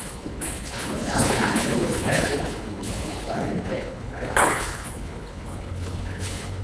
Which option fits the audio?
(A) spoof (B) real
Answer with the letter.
A